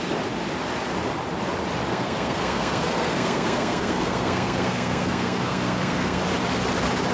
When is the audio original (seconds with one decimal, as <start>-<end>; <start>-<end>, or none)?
0.0-1.9; 6.2-7.1